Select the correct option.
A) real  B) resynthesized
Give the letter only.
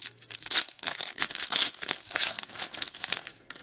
B